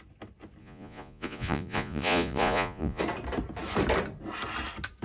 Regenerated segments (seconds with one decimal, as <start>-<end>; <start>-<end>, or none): 0.6-3.0